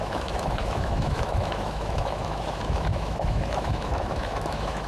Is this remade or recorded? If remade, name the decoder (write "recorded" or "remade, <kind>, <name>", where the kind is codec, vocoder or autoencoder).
remade, autoencoder, DAC-VAE